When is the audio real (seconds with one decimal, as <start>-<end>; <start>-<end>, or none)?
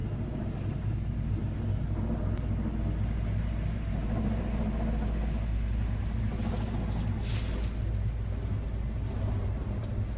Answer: 0.0-4.0; 4.6-10.2